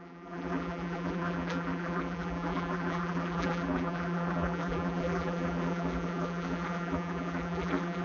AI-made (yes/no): yes